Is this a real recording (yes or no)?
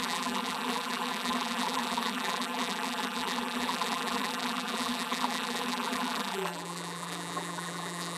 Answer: no